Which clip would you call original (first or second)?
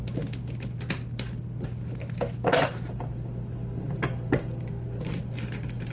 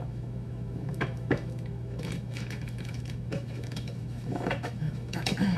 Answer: first